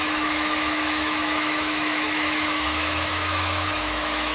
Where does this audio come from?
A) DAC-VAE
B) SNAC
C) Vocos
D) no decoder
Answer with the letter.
A